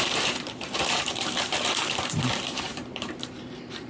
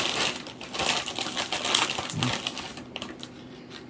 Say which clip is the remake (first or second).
first